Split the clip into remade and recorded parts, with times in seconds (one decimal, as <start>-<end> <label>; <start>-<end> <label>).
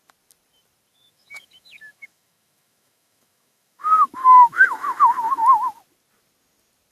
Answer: 0.0-0.9 recorded; 0.9-5.0 remade; 5.0-6.9 recorded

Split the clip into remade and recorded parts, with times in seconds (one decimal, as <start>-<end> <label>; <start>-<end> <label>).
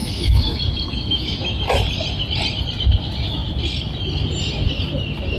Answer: 0.0-1.6 remade; 1.6-5.4 recorded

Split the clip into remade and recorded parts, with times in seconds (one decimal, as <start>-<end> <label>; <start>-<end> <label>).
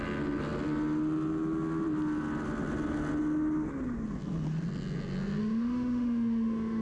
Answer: 0.0-5.4 recorded; 5.4-6.8 remade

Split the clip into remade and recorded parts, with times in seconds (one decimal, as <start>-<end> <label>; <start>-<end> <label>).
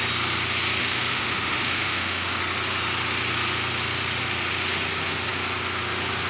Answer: 0.0-0.8 recorded; 0.8-2.4 remade; 2.4-6.3 recorded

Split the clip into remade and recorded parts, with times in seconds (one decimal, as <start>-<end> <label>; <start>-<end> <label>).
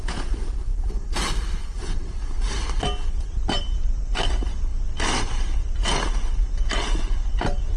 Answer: 0.0-7.8 recorded